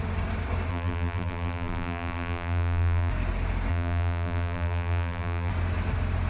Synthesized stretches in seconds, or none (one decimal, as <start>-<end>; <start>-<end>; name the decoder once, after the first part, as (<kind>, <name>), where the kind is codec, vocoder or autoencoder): 0.7-3.1 (vocoder, BigVGAN v2); 3.7-5.5